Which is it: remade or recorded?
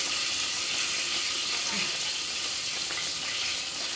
recorded